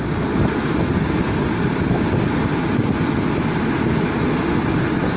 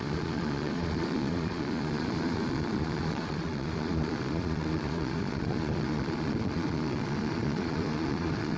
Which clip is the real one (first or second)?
first